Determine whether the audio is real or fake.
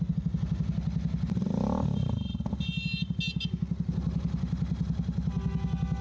real